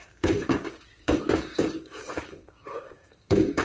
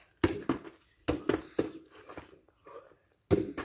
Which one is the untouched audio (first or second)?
second